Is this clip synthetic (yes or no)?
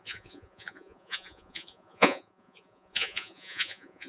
yes